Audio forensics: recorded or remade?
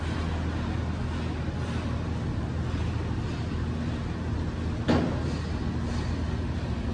recorded